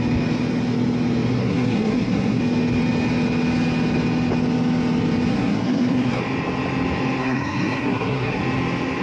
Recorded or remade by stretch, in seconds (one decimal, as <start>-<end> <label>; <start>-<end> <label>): 0.0-1.3 recorded; 1.3-2.4 remade; 2.4-5.3 recorded; 5.3-6.2 remade; 6.2-7.2 recorded; 7.2-8.4 remade; 8.4-9.0 recorded